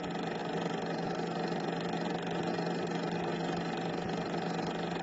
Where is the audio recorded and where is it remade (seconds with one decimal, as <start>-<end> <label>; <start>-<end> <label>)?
0.0-5.0 recorded